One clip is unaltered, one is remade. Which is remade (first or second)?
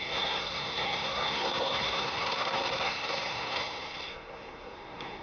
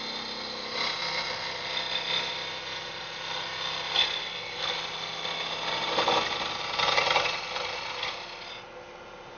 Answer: first